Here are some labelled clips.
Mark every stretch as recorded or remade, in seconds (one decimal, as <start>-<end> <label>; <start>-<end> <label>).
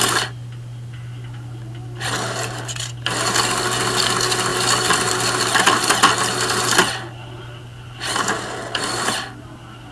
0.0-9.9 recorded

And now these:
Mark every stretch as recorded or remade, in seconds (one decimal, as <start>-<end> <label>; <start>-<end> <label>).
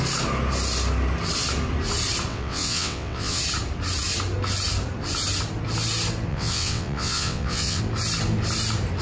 0.0-2.3 recorded; 2.3-3.4 remade; 3.4-6.3 recorded; 6.3-7.8 remade; 7.8-9.0 recorded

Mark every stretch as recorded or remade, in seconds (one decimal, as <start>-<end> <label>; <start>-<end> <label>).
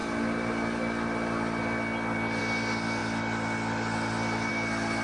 0.0-5.0 recorded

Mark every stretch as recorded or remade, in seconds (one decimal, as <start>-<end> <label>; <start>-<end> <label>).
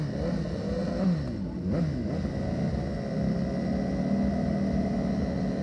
0.0-5.6 recorded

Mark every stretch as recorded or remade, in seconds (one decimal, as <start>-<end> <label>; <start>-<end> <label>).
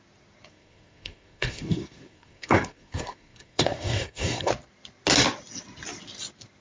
0.0-0.5 recorded; 0.5-4.5 remade; 4.5-6.6 recorded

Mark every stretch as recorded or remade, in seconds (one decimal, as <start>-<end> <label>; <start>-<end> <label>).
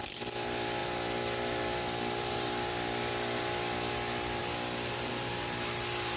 0.0-0.8 recorded; 0.8-3.9 remade; 3.9-4.4 recorded; 4.4-5.1 remade; 5.1-6.2 recorded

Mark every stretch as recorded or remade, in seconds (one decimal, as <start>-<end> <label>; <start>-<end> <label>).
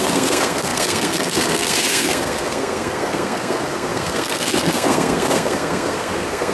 0.0-6.5 remade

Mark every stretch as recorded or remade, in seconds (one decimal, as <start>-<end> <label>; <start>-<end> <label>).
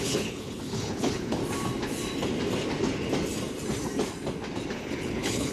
0.0-1.4 remade; 1.4-4.7 recorded; 4.7-5.5 remade